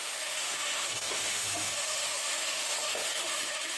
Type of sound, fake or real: fake